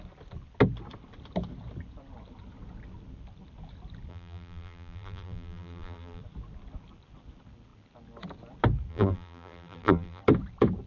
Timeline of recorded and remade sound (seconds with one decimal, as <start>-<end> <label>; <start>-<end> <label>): 0.0-4.1 recorded; 4.1-6.2 remade; 6.2-8.9 recorded; 8.9-10.2 remade; 10.2-10.9 recorded